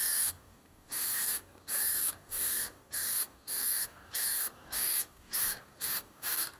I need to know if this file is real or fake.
fake